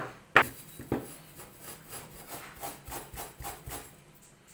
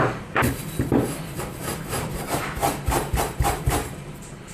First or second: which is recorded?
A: first